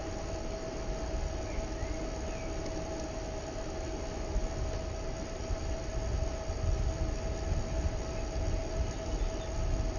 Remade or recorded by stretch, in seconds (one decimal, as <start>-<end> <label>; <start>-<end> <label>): 0.0-10.0 recorded